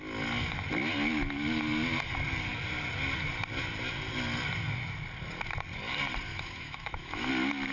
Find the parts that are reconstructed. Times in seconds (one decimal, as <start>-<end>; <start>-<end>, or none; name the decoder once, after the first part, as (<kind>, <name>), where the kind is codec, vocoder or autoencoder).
6.3-7.3 (autoencoder, DAC-VAE)